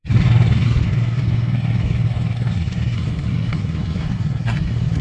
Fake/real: fake